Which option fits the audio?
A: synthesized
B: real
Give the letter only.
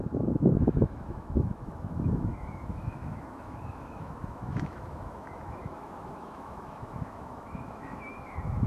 A